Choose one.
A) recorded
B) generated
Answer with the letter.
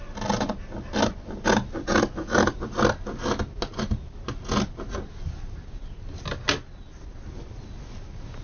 A